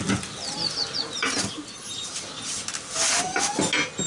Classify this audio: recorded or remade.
recorded